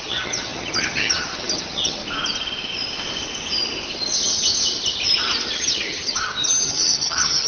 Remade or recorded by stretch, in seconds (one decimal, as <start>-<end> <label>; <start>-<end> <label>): 0.0-2.0 remade; 2.0-5.5 recorded; 5.5-7.5 remade